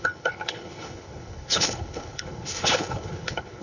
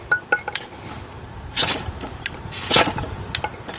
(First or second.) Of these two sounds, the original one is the second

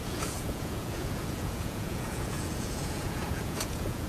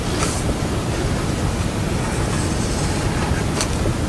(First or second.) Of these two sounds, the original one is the second